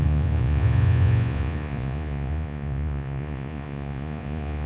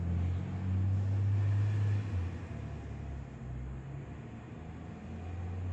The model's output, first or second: first